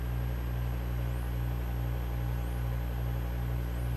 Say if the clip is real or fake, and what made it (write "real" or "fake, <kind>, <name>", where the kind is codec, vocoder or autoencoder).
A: real